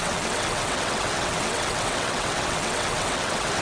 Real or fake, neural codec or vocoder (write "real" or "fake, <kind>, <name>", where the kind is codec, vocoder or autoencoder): fake, vocoder, WaveNeXt